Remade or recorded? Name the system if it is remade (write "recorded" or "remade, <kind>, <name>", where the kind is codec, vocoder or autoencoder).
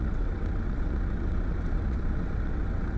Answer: remade, vocoder, WaveNeXt